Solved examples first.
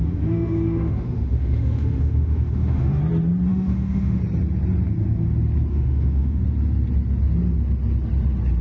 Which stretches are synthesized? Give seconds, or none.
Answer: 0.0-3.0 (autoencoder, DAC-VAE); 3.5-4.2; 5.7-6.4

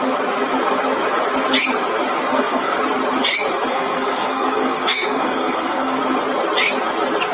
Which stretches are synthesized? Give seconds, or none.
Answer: 2.3-2.8 (codec, SNAC); 3.7-6.0

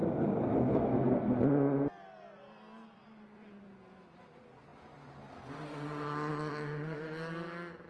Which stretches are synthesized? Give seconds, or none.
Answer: 0.7-1.4 (codec, SNAC)

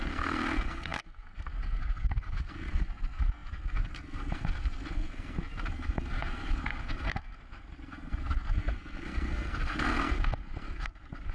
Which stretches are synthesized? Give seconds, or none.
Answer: 0.0-11.3 (codec, SNAC)